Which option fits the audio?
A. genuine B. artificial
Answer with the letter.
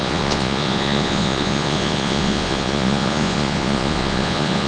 B